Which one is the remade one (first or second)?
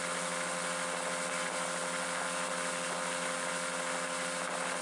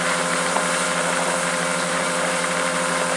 second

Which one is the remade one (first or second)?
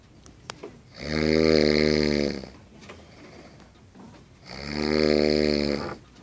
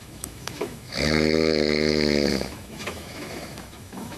second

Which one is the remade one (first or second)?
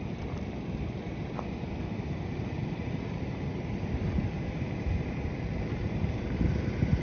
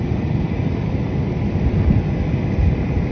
first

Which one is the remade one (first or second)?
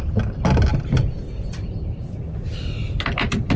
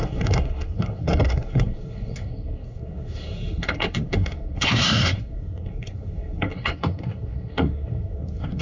second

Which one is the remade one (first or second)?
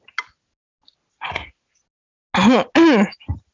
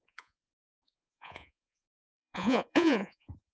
second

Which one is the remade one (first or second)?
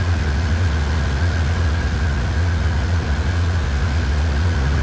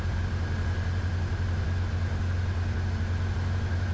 first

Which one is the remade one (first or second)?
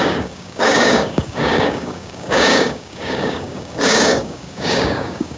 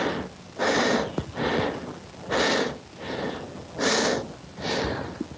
first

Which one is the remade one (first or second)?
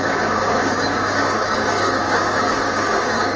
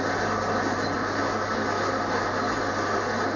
first